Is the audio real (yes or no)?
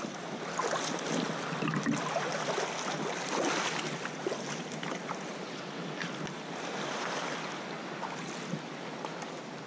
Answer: yes